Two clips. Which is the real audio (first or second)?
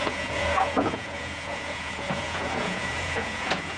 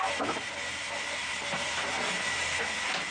second